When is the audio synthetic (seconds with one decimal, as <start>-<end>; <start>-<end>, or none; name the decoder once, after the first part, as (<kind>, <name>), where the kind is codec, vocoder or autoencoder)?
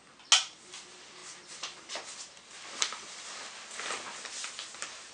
none